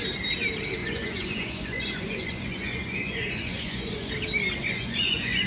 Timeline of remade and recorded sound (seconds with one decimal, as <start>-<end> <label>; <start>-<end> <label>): 0.0-0.8 recorded; 0.8-4.1 remade; 4.1-4.6 recorded; 4.6-5.5 remade